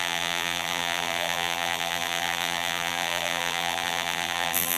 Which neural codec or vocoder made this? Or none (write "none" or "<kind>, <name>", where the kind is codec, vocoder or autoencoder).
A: vocoder, BigVGAN v2